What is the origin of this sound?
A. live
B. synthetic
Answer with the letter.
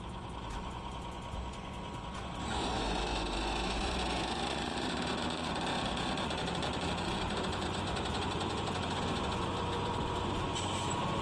B